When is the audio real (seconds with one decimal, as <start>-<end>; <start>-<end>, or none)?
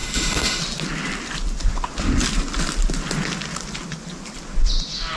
0.6-5.2